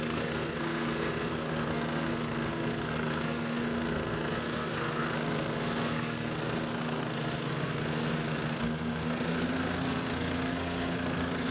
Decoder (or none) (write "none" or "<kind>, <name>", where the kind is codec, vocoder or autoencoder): codec, SNAC